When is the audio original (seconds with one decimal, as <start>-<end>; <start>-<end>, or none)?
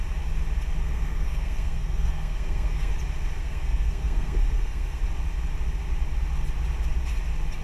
0.0-0.8; 2.9-3.4; 5.0-7.6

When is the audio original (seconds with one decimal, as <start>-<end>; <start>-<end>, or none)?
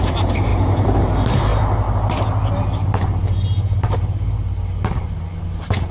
0.5-1.0; 1.5-5.0